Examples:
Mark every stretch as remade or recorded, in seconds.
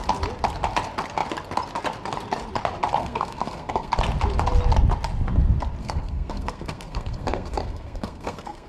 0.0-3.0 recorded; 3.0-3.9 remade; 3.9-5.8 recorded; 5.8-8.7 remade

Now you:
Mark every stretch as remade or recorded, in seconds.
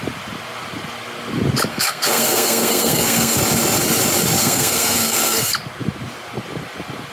0.0-1.7 recorded; 1.7-3.4 remade; 3.4-4.4 recorded; 4.4-5.5 remade; 5.5-7.1 recorded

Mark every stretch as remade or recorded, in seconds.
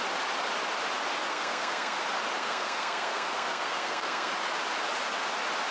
0.0-1.3 recorded; 1.3-2.0 remade; 2.0-2.4 recorded; 2.4-4.3 remade; 4.3-5.7 recorded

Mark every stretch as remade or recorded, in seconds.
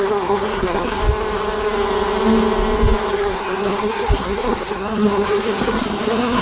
0.0-1.0 remade; 1.0-3.1 recorded; 3.1-6.4 remade